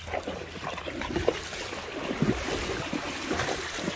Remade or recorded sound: remade